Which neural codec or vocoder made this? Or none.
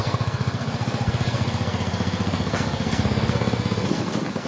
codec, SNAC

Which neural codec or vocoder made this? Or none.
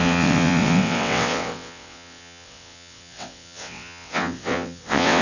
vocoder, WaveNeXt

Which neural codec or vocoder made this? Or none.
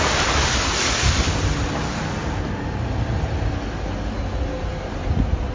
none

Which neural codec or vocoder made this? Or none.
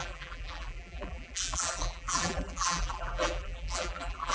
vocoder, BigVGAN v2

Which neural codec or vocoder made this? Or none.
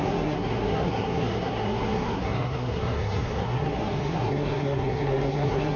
codec, SNAC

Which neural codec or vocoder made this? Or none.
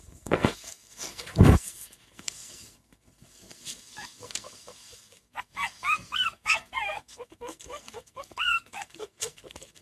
codec, SNAC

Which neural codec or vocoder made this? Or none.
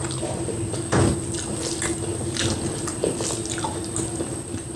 none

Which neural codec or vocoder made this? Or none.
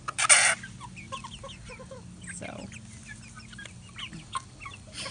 none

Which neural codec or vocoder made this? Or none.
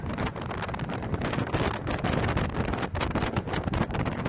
none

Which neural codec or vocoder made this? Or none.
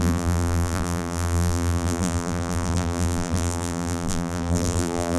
vocoder, BigVGAN v2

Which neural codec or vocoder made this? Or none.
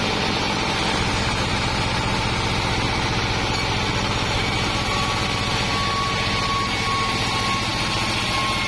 none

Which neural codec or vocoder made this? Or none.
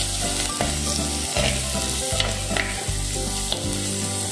none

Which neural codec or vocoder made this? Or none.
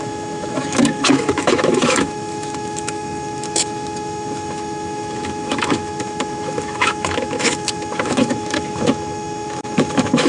autoencoder, DAC-VAE